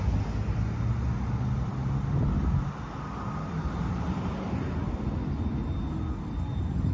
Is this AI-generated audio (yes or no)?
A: no